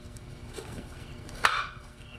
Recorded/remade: remade